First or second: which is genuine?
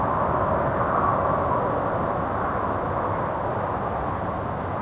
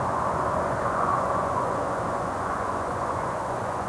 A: first